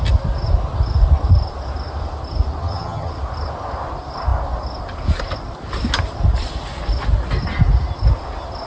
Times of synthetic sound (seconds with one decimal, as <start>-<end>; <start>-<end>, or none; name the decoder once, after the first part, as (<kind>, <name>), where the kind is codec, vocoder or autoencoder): 2.6-3.1 (vocoder, HiFi-GAN)